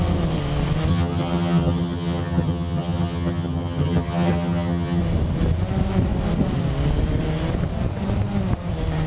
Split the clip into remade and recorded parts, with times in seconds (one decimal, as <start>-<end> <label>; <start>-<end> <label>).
0.0-0.9 recorded; 0.9-5.0 remade; 5.0-9.1 recorded